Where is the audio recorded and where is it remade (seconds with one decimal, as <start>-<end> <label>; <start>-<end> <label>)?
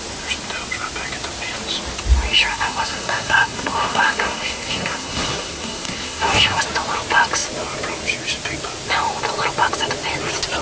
0.0-2.5 recorded; 2.5-6.6 remade; 6.6-10.6 recorded